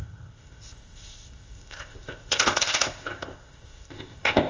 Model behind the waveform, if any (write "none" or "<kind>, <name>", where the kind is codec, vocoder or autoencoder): codec, ZipCodec